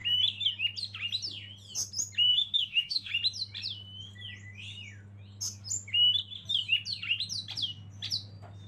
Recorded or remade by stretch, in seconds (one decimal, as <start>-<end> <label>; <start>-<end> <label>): 0.0-2.3 recorded; 2.3-3.1 remade; 3.1-8.7 recorded